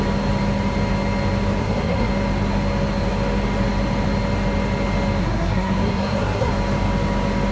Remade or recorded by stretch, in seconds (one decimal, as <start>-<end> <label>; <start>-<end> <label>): 0.0-1.6 recorded; 1.6-2.1 remade; 2.1-5.2 recorded; 5.2-6.5 remade; 6.5-7.5 recorded